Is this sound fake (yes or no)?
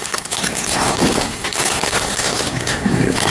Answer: yes